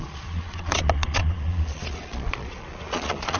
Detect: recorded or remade remade